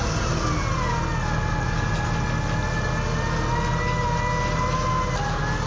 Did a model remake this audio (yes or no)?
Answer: no